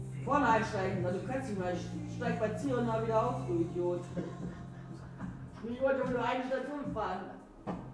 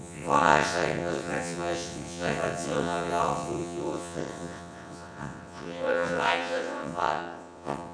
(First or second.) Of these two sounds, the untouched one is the first